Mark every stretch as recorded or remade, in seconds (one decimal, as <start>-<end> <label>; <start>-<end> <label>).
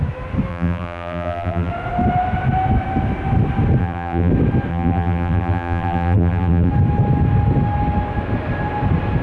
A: 0.0-0.5 recorded; 0.5-1.7 remade; 1.7-3.8 recorded; 3.8-4.3 remade; 4.3-4.7 recorded; 4.7-6.7 remade; 6.7-9.2 recorded